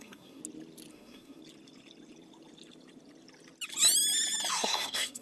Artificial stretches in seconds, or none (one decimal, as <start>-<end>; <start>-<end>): 0.0-0.4; 0.9-1.4; 4.5-5.2